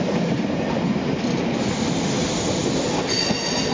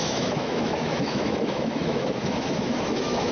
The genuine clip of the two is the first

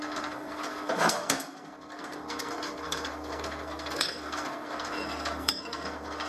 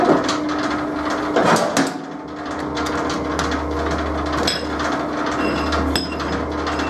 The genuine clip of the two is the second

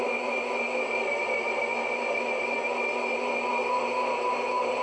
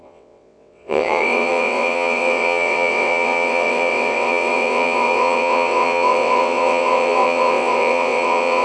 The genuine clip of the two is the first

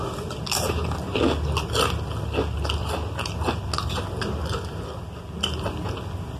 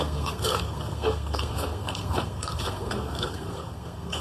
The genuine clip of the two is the first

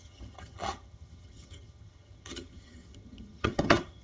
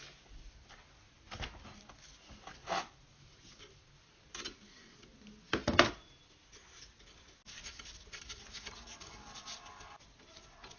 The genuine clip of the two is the second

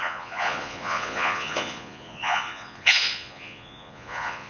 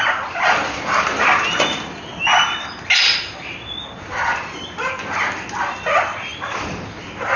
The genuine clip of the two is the second